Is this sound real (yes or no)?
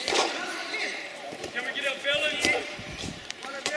no